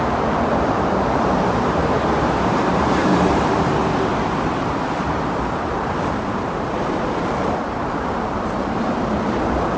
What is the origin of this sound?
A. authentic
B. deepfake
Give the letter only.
B